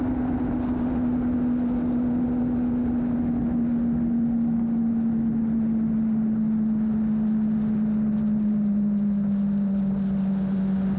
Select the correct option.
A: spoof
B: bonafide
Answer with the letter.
B